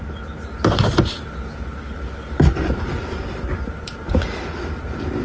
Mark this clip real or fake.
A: real